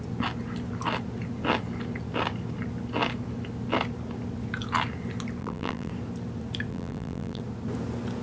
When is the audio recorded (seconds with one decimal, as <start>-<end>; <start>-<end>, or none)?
0.0-5.4; 5.9-6.7; 7.4-8.2